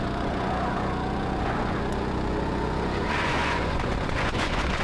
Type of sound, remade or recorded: remade